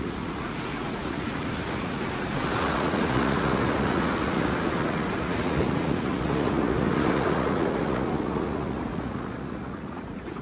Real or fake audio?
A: fake